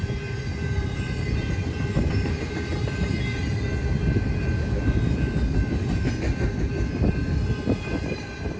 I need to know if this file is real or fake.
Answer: real